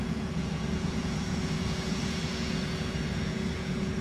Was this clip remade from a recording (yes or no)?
yes